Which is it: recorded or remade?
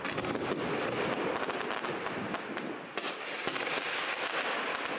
recorded